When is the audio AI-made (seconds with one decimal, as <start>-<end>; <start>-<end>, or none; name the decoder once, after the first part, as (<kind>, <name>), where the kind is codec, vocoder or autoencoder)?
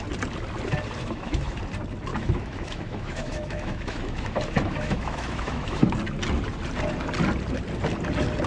1.0-1.6 (autoencoder, DAC-VAE); 2.1-5.9